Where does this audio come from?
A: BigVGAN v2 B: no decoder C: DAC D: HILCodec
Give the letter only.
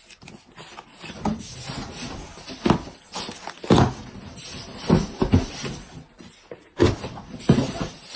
B